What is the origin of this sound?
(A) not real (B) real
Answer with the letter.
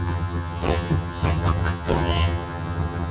A